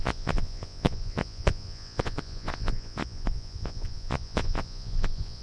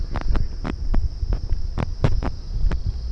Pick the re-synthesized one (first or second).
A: first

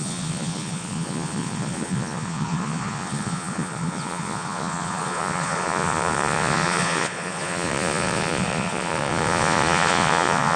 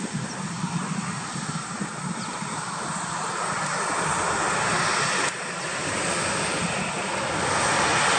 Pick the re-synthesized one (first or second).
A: first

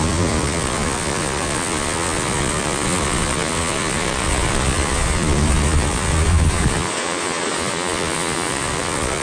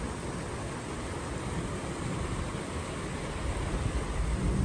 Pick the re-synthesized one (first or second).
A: first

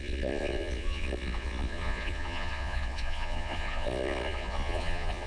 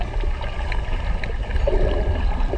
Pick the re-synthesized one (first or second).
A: first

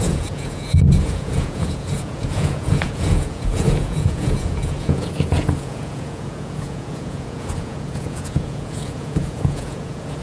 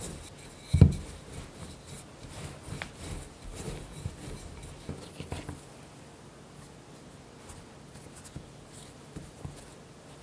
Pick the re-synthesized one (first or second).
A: first